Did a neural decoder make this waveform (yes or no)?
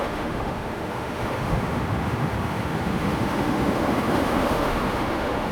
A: yes